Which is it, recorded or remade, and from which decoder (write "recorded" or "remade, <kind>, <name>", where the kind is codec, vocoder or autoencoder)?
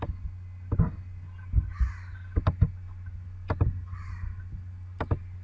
recorded